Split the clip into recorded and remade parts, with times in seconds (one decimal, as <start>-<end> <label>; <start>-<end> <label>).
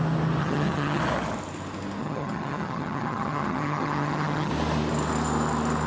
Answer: 0.0-0.4 recorded; 0.4-1.0 remade; 1.0-2.0 recorded; 2.0-4.5 remade; 4.5-5.9 recorded